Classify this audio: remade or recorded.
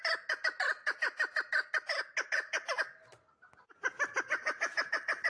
recorded